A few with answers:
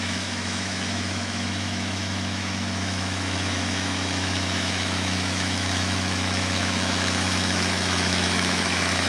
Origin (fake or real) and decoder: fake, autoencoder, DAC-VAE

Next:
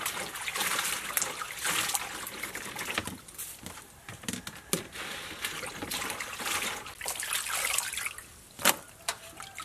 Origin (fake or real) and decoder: real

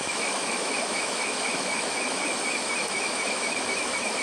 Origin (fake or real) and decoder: fake, autoencoder, DAC-VAE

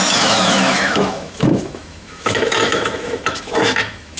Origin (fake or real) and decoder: fake, autoencoder, DAC-VAE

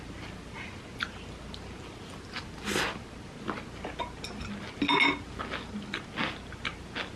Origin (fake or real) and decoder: real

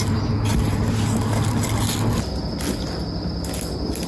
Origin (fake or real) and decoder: real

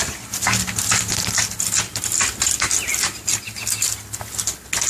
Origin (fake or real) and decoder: real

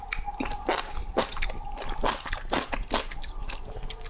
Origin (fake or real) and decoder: real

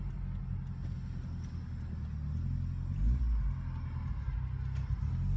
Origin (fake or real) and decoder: real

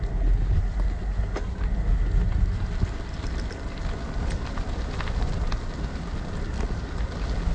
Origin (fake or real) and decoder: real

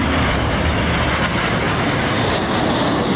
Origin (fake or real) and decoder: real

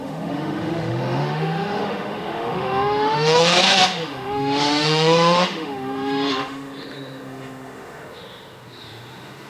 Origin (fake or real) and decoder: fake, autoencoder, DAC-VAE